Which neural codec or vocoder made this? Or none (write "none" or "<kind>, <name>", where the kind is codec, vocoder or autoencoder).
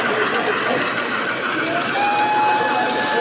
none